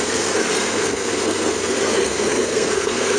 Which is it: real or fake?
fake